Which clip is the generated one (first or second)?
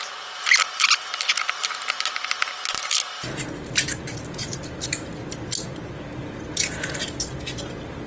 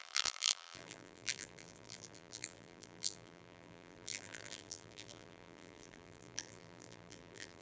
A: second